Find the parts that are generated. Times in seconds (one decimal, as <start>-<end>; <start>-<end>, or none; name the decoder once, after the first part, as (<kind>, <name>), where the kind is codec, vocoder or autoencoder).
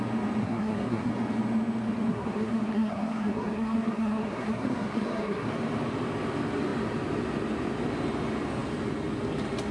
0.4-1.1 (codec, SNAC); 2.1-5.5